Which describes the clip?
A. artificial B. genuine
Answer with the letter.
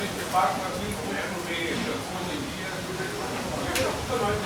B